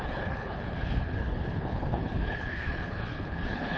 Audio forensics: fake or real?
fake